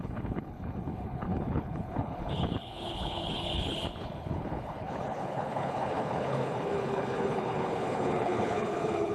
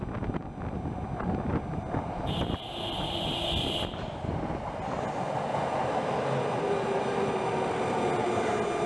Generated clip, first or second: first